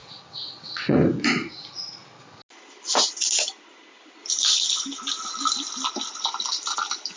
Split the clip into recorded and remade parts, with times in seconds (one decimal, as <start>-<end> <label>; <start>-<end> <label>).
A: 0.0-1.2 remade; 1.2-7.2 recorded